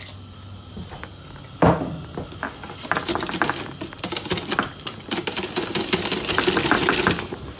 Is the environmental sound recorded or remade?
recorded